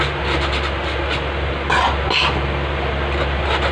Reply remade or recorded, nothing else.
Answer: recorded